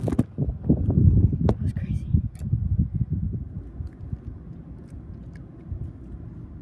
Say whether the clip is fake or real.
real